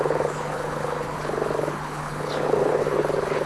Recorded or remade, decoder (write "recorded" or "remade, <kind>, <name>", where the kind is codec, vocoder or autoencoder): remade, codec, HILCodec